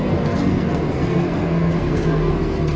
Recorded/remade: remade